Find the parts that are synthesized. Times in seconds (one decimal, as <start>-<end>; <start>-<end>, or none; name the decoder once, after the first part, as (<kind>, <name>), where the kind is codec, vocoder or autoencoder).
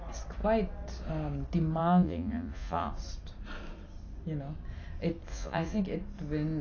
1.8-2.9 (vocoder, Vocos); 5.3-5.8